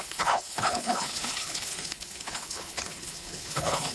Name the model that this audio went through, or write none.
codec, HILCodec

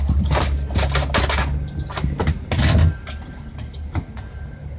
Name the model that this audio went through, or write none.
none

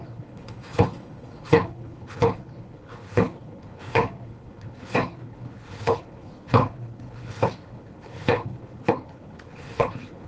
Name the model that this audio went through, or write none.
codec, HILCodec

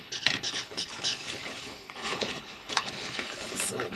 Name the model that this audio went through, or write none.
codec, HILCodec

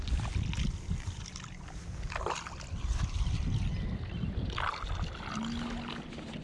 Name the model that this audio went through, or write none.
none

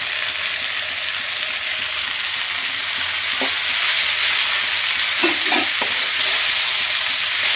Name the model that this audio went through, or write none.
none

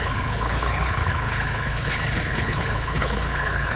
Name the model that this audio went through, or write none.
codec, HILCodec